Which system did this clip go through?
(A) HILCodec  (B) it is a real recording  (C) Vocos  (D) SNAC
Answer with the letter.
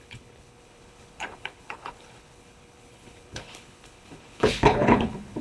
A